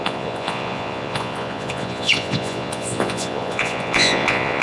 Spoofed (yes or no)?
yes